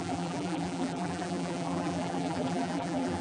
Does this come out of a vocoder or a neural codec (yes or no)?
yes